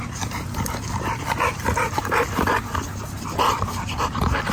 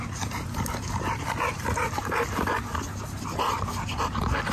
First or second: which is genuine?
second